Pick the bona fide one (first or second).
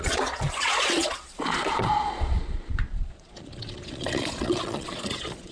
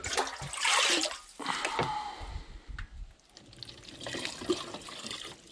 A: second